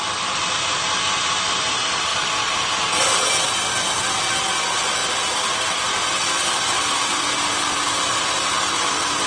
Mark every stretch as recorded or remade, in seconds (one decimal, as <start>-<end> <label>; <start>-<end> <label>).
0.0-9.3 recorded